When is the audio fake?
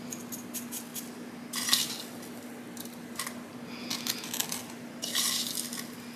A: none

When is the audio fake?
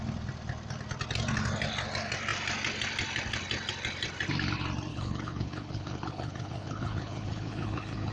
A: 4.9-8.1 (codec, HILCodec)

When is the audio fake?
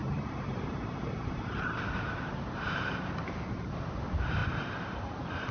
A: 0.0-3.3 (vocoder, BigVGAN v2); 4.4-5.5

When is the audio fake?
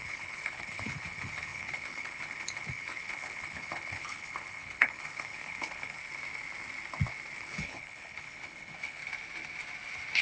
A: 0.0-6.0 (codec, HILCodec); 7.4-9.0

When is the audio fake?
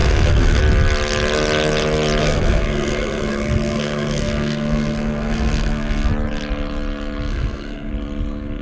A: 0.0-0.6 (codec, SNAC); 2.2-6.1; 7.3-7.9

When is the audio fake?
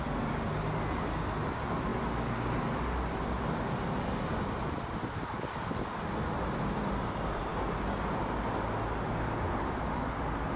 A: none